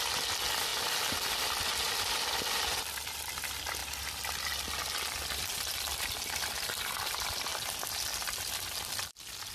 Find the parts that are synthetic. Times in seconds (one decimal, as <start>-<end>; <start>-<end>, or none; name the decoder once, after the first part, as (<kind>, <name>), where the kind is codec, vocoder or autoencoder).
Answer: none